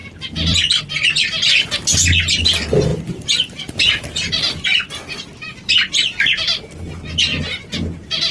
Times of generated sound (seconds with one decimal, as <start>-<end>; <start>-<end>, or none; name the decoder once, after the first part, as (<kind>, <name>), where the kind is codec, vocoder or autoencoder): 0.0-0.8 (vocoder, BigVGAN v2); 2.9-5.9; 7.3-7.8